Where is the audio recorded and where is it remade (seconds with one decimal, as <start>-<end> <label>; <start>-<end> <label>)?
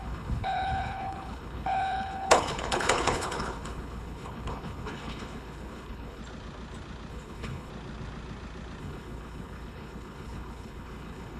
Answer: 0.0-6.2 remade; 6.2-7.1 recorded; 7.1-7.7 remade; 7.7-8.8 recorded; 8.8-11.4 remade